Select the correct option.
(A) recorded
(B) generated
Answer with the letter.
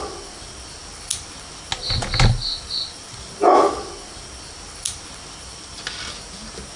A